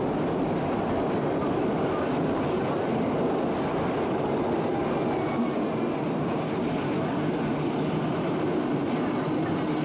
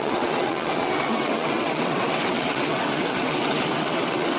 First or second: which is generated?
second